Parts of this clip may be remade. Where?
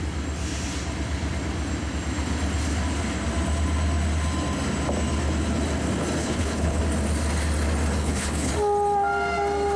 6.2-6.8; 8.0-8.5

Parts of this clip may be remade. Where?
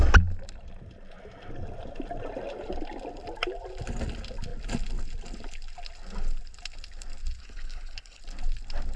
7.4-8.2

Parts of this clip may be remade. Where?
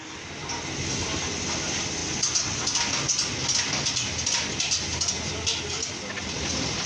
none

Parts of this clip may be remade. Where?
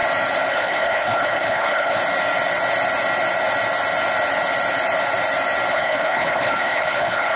0.5-2.0; 5.7-7.4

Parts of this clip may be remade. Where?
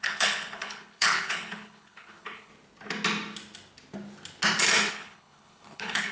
0.0-2.5; 4.9-6.1